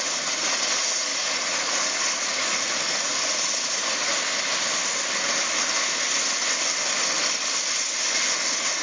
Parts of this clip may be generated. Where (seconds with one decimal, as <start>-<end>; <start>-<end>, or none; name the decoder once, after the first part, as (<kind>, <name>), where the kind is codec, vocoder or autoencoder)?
0.0-4.1 (vocoder, Vocos)